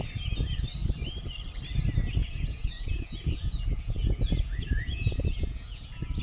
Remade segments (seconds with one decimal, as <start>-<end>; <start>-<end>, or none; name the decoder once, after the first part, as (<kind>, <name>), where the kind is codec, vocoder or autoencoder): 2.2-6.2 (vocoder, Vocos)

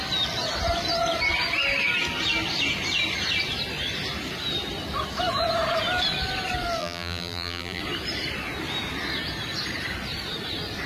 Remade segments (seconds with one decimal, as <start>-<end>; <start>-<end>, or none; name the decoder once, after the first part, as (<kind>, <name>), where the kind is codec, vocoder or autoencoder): 6.8-7.8 (vocoder, BigVGAN v2)

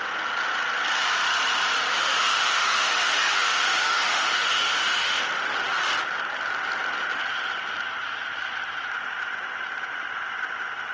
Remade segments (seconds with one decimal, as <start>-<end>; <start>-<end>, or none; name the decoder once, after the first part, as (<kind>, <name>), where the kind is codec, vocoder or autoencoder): 1.9-5.2 (autoencoder, DAC-VAE)

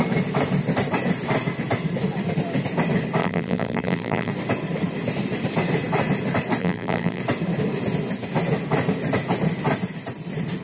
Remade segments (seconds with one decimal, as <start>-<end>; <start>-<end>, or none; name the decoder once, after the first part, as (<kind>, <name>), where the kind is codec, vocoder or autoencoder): 3.2-4.3 (vocoder, BigVGAN v2); 6.6-7.2